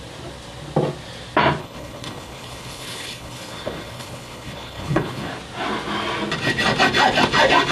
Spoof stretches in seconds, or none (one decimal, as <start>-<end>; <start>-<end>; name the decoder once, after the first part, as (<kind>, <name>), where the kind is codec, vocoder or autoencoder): 1.6-5.3 (codec, HILCodec)